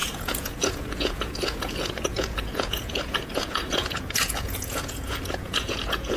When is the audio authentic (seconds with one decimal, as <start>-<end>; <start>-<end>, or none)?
none